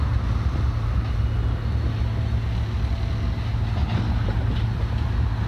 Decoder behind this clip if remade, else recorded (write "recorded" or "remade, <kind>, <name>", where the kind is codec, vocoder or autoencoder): recorded